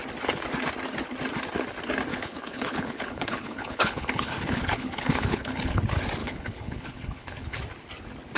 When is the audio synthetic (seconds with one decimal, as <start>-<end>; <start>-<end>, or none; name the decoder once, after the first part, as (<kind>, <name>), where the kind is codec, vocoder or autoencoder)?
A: 2.1-5.8 (codec, HILCodec); 6.2-7.6